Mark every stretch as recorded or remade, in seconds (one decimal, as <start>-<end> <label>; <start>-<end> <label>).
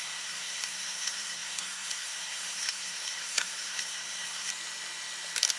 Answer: 0.0-4.5 remade; 4.5-5.6 recorded